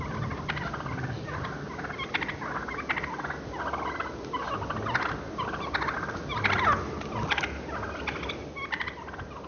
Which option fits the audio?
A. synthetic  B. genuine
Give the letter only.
B